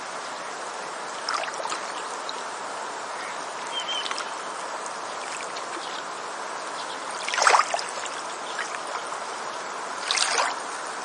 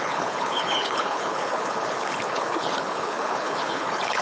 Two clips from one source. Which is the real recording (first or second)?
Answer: first